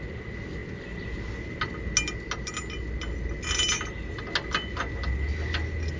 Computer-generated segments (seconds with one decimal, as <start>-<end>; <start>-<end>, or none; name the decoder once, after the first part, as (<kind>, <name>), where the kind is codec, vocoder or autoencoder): none